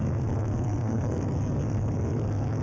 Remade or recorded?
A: remade